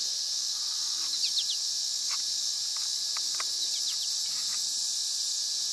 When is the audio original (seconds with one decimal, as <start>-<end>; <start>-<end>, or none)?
2.7-4.8

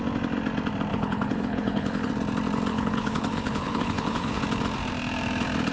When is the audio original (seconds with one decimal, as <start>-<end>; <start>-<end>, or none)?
0.0-0.9; 2.1-2.7; 4.4-5.7